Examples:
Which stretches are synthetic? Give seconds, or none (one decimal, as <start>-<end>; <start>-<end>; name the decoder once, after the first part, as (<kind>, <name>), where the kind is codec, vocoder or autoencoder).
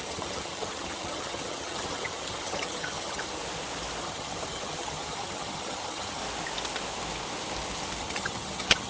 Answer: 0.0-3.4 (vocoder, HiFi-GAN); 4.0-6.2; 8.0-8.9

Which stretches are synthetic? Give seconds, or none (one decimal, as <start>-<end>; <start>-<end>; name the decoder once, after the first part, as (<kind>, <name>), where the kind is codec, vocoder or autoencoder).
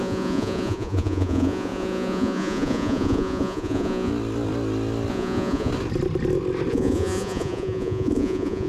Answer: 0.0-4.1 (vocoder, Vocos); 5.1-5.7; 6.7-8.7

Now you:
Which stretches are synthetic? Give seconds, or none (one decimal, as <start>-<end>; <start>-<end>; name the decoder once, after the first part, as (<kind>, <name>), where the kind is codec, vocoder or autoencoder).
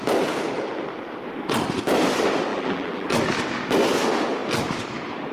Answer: 2.5-3.1 (vocoder, BigVGAN v2)